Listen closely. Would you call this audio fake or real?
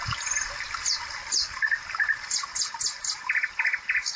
real